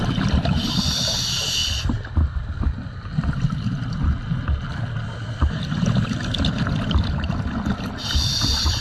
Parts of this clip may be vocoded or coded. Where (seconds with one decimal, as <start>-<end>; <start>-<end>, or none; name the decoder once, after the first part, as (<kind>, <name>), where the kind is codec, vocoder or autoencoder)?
none